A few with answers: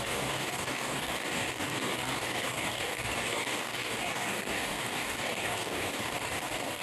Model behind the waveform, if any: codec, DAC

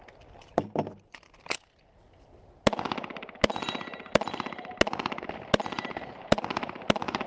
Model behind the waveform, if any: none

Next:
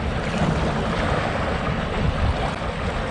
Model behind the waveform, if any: none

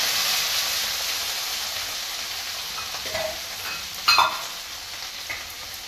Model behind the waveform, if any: none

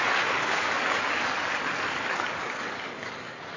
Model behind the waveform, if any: codec, DAC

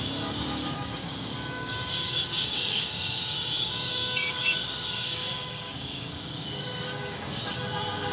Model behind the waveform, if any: codec, DAC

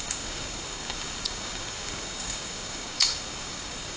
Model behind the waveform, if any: codec, DAC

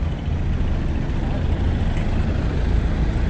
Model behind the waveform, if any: none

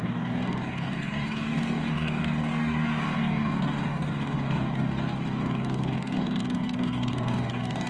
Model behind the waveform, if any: codec, DAC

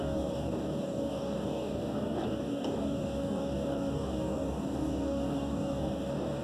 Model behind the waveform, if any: codec, DAC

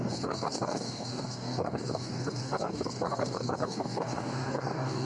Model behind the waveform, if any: codec, DAC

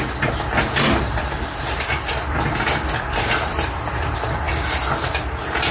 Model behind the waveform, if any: none